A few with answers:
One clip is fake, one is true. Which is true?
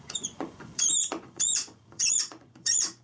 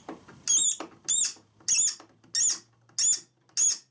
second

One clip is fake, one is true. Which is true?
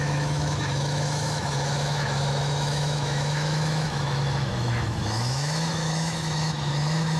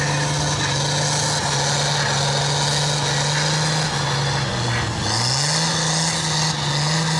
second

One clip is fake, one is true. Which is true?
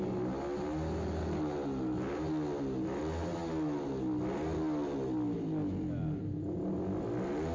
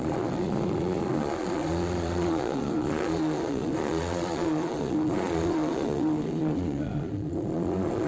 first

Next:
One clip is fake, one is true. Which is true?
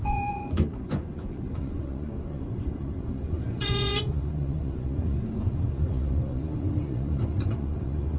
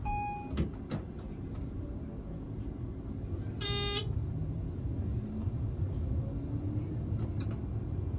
second